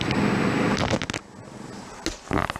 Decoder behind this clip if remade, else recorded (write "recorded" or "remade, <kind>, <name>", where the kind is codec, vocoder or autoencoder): recorded